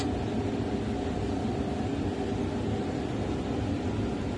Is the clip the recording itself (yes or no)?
no